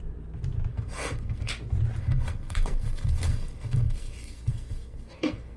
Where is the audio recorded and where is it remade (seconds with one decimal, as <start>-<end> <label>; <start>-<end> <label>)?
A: 0.0-0.7 recorded; 0.7-1.5 remade; 1.5-2.0 recorded; 2.0-5.6 remade